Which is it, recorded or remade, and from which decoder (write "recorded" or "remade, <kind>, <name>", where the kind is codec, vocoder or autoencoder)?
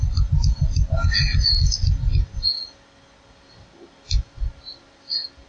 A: recorded